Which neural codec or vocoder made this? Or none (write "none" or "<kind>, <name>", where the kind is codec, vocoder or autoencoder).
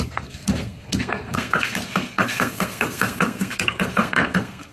codec, SNAC